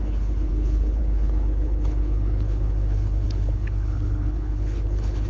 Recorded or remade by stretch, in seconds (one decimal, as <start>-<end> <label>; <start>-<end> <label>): 0.0-5.3 remade

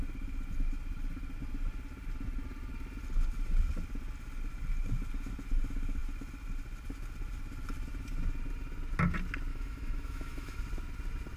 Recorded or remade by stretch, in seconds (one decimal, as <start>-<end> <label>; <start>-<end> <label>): 0.0-9.5 recorded; 9.5-10.6 remade; 10.6-11.4 recorded

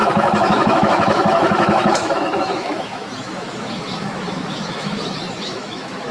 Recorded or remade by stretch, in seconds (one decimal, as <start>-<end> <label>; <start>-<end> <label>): 0.0-6.1 remade

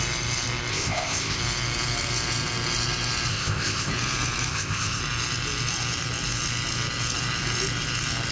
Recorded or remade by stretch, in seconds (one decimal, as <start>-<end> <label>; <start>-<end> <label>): 0.0-0.7 recorded; 0.7-1.4 remade; 1.4-3.3 recorded; 3.3-3.9 remade; 3.9-4.5 recorded; 4.5-5.0 remade; 5.0-8.3 recorded

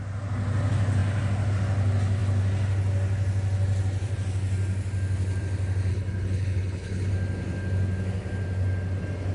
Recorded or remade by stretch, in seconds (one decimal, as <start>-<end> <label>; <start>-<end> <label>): 0.0-5.9 recorded; 5.9-7.1 remade; 7.1-9.3 recorded

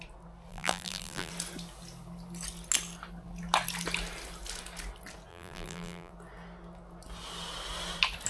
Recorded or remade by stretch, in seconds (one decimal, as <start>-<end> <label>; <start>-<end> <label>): 0.0-0.5 recorded; 0.5-1.3 remade; 1.3-5.3 recorded; 5.3-6.1 remade; 6.1-8.3 recorded